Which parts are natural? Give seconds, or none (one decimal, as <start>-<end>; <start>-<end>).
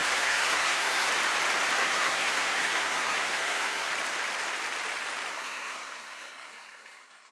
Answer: 1.1-1.8; 3.9-5.3